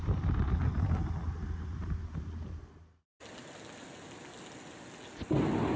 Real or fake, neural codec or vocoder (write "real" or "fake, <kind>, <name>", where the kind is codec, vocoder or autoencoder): real